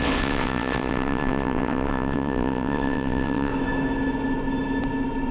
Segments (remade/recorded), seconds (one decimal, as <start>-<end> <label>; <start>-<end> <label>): 0.0-3.5 remade; 3.5-5.3 recorded